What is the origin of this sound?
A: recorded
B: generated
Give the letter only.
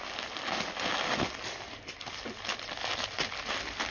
A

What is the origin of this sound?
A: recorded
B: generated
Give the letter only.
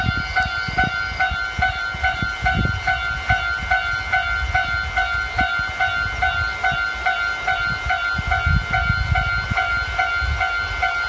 A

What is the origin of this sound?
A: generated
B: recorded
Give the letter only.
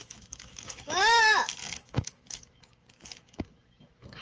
A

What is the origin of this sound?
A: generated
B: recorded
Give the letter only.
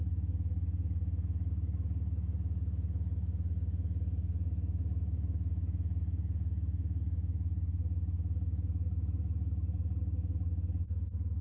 A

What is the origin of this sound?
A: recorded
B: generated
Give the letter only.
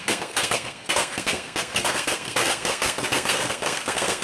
B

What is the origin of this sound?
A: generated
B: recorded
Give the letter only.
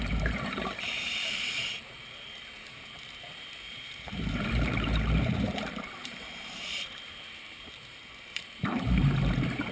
A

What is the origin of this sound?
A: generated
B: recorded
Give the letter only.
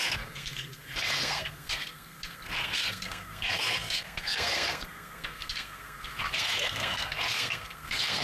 A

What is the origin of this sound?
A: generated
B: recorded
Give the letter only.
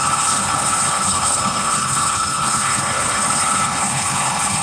A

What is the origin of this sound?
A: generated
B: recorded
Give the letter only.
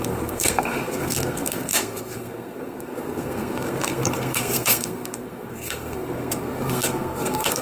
A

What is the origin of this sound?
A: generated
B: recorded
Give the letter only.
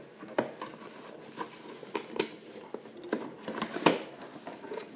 B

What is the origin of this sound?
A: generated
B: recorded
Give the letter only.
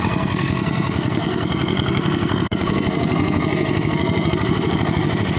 A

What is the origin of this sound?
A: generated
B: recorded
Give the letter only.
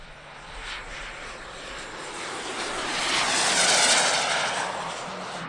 B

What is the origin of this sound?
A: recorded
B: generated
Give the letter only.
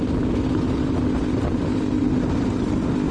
A